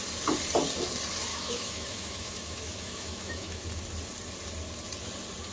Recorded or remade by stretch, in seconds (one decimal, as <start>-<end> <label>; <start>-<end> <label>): 0.0-1.3 recorded; 1.3-3.6 remade; 3.6-5.5 recorded